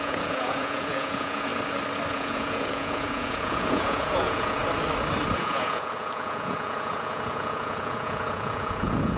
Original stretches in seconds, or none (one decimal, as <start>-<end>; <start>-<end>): 1.5-2.1; 4.6-5.4

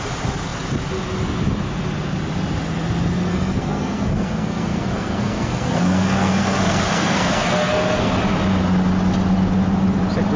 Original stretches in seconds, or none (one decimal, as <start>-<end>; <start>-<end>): 0.0-3.3; 8.1-10.4

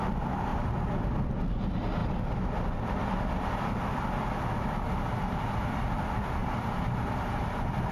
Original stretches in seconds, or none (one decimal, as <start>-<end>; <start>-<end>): 0.0-0.5; 1.1-6.4

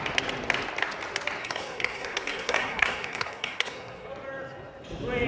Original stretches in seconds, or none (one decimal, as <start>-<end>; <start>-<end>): 0.0-1.4; 4.1-5.3

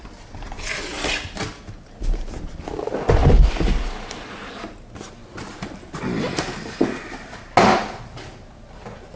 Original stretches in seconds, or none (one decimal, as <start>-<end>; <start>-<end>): 0.0-5.2; 6.0-9.2

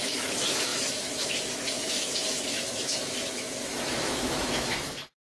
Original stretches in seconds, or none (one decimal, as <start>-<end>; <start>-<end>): none

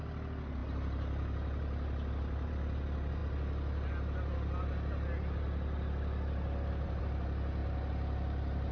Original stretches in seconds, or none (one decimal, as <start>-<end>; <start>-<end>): 0.0-8.7